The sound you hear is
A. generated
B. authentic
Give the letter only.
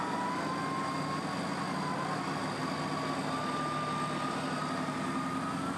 B